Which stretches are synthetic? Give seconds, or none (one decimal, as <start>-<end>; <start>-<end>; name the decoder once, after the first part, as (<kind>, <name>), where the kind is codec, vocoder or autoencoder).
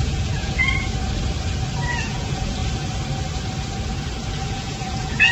0.0-0.6 (vocoder, Vocos); 1.9-2.6; 4.5-5.3